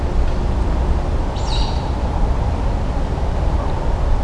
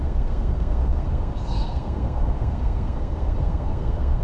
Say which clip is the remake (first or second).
second